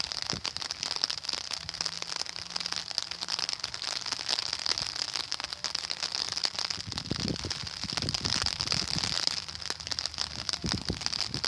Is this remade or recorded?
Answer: recorded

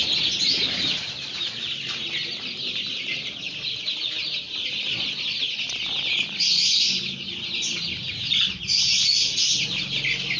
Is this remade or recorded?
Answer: recorded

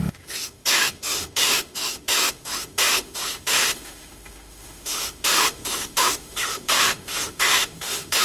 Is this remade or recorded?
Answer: remade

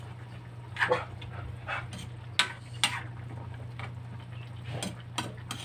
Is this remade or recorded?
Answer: recorded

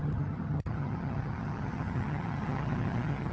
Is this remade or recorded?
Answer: remade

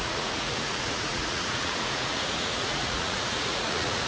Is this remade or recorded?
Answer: remade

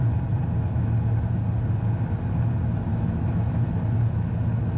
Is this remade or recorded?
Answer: recorded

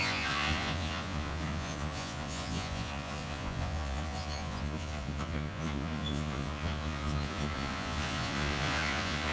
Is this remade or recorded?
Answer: remade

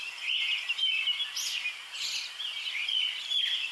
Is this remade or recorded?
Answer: remade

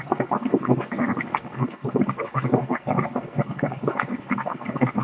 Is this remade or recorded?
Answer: remade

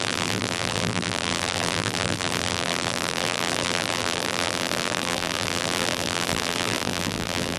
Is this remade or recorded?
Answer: remade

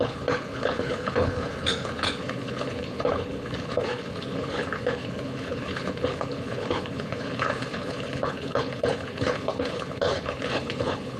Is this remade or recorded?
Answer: remade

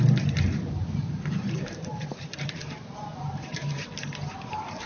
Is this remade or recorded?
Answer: remade